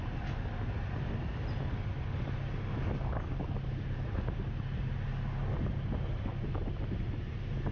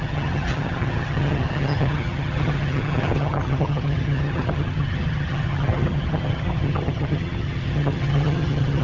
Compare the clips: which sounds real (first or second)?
first